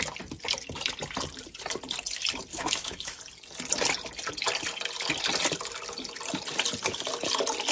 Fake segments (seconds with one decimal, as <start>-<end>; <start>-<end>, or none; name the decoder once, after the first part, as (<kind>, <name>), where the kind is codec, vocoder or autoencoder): 2.5-3.2 (autoencoder, DAC-VAE)